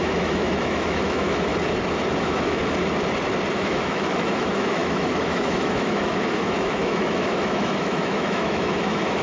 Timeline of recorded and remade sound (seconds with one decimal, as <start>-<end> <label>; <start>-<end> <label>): 0.0-1.5 remade; 1.5-2.2 recorded; 2.2-2.6 remade; 2.6-3.5 recorded; 3.5-9.2 remade